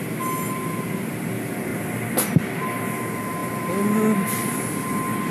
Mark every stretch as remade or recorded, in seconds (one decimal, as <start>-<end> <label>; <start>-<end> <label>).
0.0-1.7 recorded; 1.7-2.4 remade; 2.4-5.3 recorded